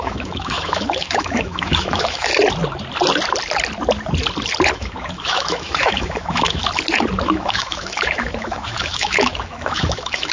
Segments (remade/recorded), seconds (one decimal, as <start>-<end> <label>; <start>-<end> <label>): 0.0-2.3 remade; 2.3-4.7 recorded; 4.7-6.6 remade; 6.6-7.2 recorded; 7.2-10.3 remade